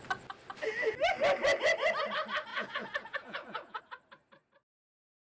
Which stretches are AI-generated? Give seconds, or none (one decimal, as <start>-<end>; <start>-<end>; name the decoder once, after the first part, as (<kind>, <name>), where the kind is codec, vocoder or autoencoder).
2.5-3.8 (vocoder, Vocos)